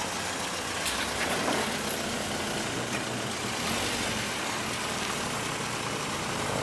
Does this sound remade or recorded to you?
recorded